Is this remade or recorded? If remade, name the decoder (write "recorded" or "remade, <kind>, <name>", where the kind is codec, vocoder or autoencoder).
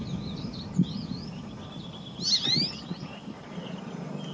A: recorded